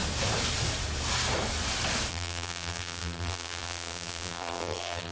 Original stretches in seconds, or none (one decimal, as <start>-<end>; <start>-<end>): 0.0-2.1